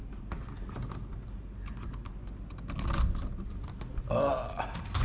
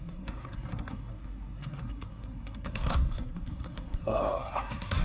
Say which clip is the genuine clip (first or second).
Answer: first